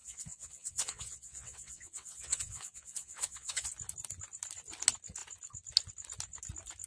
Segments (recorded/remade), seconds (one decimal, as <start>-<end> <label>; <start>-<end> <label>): 0.0-3.7 remade; 3.7-6.9 recorded